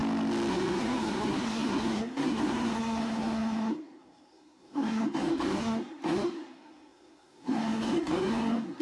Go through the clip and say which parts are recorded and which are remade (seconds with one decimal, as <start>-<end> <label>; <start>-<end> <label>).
0.0-0.5 recorded; 0.5-8.8 remade